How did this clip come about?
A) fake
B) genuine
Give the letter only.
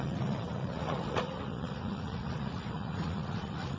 A